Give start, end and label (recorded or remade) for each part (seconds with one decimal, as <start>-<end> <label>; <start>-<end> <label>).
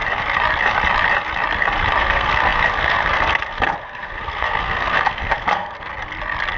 0.0-2.0 recorded; 2.0-5.9 remade; 5.9-6.6 recorded